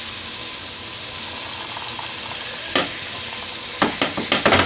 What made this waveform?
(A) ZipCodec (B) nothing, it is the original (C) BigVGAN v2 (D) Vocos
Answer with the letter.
B